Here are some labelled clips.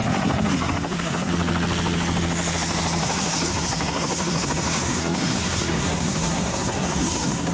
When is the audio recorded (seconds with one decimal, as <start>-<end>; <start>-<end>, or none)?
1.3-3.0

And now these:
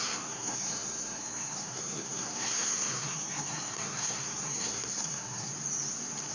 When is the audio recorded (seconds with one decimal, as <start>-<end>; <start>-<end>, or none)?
5.5-6.3

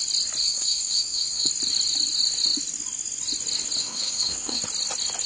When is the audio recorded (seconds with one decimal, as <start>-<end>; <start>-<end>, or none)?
0.0-0.4; 1.5-3.8; 4.6-5.3